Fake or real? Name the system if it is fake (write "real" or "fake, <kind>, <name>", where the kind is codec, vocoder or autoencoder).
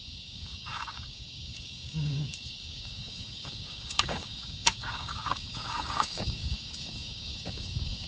fake, codec, DAC